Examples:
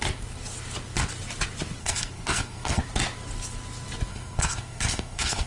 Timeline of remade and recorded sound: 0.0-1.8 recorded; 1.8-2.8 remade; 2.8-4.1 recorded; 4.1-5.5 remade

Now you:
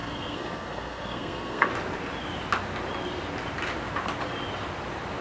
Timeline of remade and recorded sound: 0.0-1.7 remade; 1.7-5.2 recorded

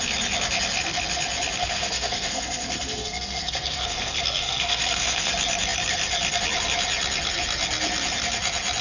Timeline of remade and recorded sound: 0.0-1.6 recorded; 1.6-5.3 remade; 5.3-8.8 recorded